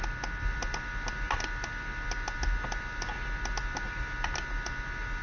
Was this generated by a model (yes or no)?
no